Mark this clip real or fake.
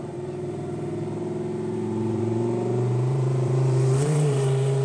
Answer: fake